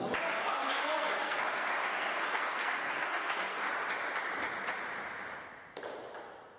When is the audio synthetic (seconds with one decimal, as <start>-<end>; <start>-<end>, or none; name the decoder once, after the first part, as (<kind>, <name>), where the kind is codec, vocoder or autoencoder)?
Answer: 0.4-3.7 (codec, SNAC)